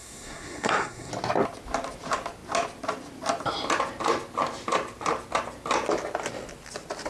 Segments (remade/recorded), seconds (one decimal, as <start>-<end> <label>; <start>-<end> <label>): 0.0-1.1 remade; 1.1-7.1 recorded